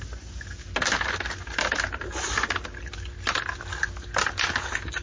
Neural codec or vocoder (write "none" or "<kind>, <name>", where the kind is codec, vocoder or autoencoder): none